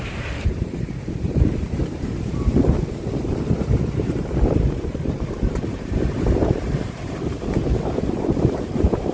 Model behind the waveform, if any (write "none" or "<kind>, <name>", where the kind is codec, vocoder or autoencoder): vocoder, BigVGAN v2